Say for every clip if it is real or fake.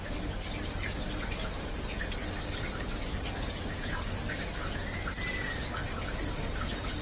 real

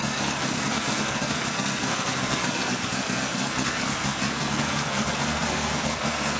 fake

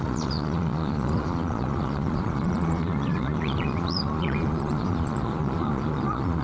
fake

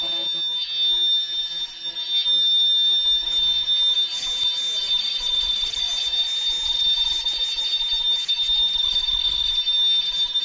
real